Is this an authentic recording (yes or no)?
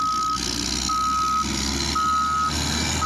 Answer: yes